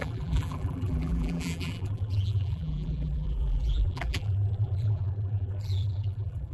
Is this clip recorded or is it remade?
remade